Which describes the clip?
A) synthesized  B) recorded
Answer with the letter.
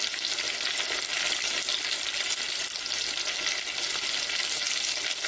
B